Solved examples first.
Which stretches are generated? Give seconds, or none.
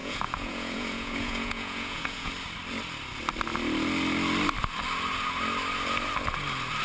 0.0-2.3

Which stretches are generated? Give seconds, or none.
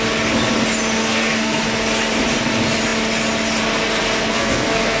1.0-1.6; 4.3-5.0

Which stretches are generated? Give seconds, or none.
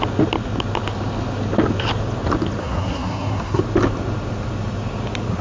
2.6-3.6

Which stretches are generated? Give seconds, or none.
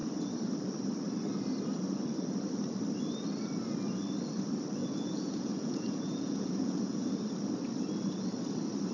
4.8-7.2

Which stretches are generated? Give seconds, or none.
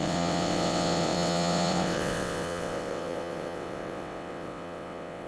0.0-5.3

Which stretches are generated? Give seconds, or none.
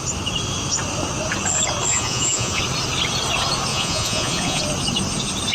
1.9-2.6; 3.7-4.6